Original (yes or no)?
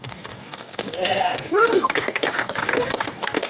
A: no